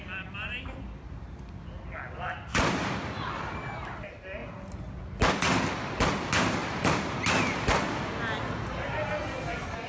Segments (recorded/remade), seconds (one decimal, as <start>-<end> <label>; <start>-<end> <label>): 0.0-2.5 recorded; 2.5-3.1 remade; 3.1-4.4 recorded; 4.4-5.2 remade; 5.2-6.6 recorded; 6.6-7.1 remade; 7.1-9.9 recorded